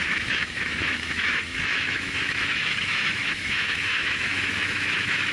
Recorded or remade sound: remade